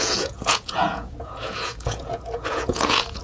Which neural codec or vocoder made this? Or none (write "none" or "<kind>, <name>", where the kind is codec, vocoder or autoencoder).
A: vocoder, Vocos